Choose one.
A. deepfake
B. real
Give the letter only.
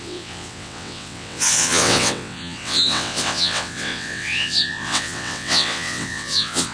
A